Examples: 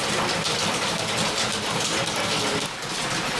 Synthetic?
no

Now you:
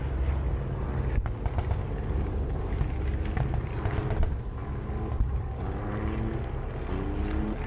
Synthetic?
no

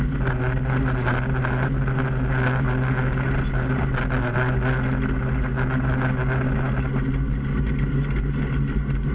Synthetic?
no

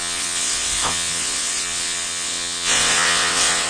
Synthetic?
yes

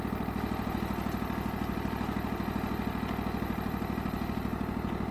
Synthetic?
no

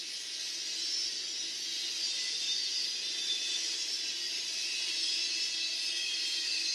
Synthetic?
no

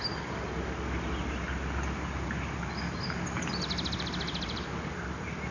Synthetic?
no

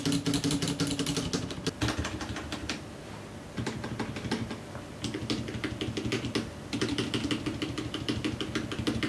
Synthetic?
no